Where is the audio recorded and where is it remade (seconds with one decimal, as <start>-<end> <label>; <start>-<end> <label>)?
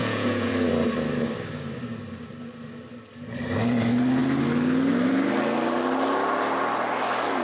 0.0-0.5 remade; 0.5-7.4 recorded